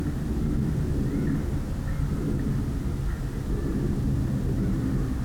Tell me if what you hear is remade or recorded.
recorded